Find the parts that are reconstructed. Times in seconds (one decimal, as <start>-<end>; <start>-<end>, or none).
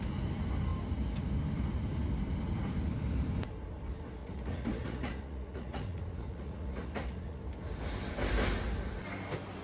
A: 4.2-7.4